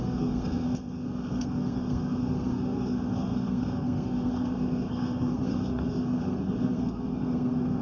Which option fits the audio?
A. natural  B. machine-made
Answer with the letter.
B